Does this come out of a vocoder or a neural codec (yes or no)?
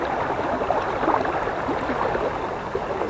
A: no